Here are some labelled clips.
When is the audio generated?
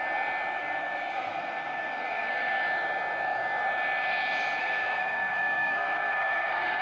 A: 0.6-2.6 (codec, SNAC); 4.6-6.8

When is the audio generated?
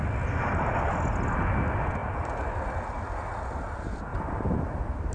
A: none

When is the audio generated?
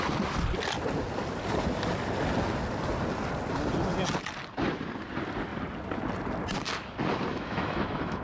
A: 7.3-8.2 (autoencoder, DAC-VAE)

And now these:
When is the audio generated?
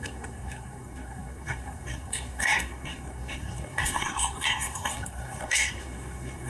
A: 0.0-6.5 (codec, SNAC)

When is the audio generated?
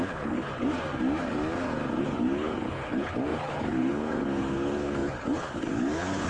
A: 0.0-0.5 (codec, HILCodec); 2.0-6.3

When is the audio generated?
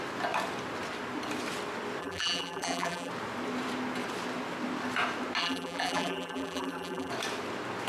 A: 2.0-3.1 (vocoder, BigVGAN v2); 5.4-7.1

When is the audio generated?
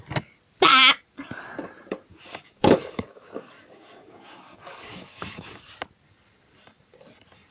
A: 2.1-5.7 (codec, DAC)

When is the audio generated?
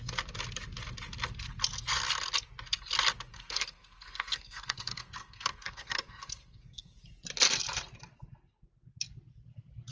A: 3.3-6.9 (codec, SNAC)